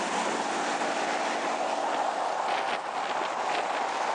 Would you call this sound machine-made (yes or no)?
no